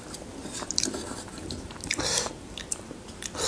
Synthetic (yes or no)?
yes